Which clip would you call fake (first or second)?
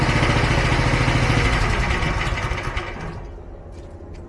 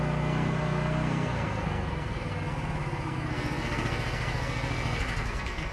second